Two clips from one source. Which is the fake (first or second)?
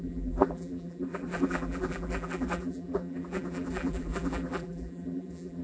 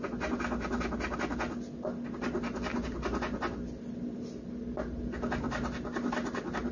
first